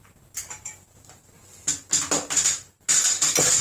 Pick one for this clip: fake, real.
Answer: real